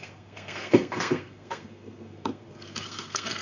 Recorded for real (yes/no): no